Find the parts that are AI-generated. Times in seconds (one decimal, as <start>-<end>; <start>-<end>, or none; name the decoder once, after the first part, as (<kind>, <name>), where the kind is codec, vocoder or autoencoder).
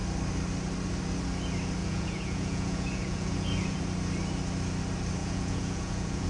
1.8-3.8 (vocoder, Vocos); 5.2-6.3